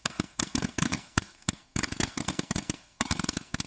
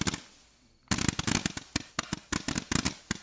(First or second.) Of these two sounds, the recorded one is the second